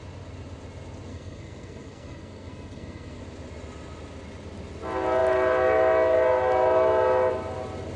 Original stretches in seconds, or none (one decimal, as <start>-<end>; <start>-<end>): 0.0-1.1; 3.2-8.0